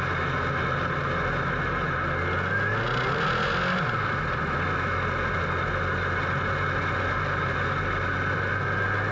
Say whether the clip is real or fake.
real